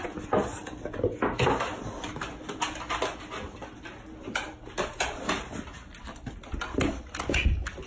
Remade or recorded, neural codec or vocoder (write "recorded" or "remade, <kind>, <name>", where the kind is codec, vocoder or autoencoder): recorded